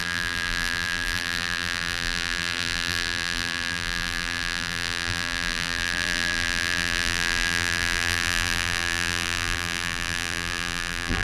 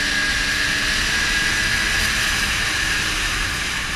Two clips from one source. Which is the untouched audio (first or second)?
second